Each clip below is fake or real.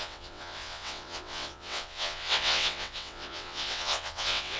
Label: fake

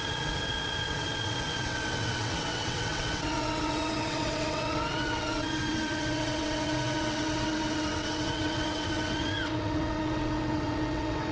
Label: fake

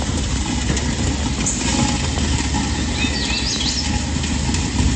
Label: real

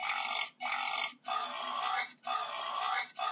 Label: real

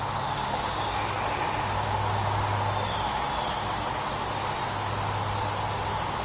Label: real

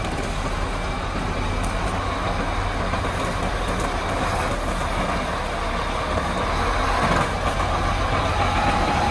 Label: real